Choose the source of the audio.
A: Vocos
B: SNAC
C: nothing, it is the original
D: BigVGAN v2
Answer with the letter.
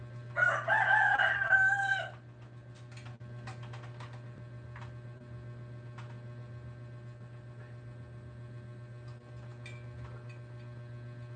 C